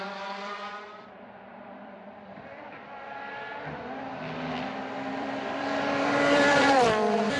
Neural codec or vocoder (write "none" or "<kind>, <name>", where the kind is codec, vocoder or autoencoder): vocoder, BigVGAN v2